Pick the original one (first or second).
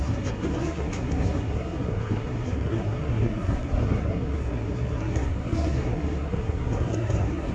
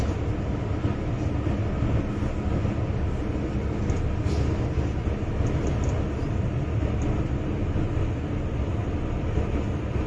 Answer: second